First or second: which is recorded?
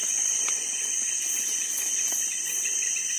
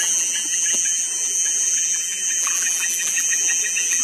first